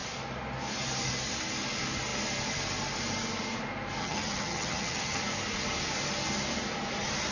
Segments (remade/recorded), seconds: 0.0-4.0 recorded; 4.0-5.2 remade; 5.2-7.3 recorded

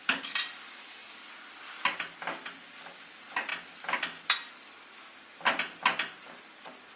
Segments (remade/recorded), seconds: 0.0-7.0 recorded